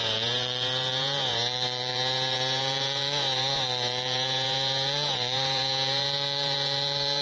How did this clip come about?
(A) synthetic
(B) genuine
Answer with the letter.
A